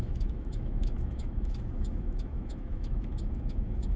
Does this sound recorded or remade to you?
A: remade